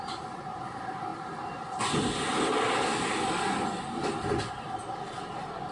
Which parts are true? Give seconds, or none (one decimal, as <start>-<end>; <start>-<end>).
0.0-5.7